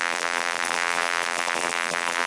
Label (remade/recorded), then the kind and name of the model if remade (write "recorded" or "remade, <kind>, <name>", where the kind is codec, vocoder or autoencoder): remade, vocoder, BigVGAN v2